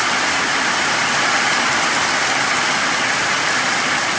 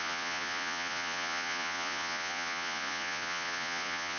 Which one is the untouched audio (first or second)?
first